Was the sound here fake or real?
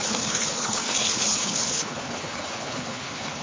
fake